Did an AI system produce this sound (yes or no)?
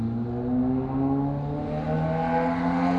no